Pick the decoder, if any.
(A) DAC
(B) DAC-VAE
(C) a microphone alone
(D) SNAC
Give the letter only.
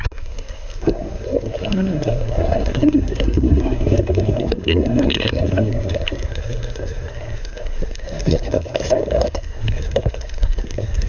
D